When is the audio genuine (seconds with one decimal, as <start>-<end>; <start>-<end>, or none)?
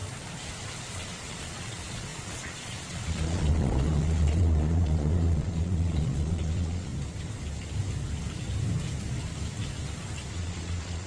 0.0-0.9; 6.9-10.3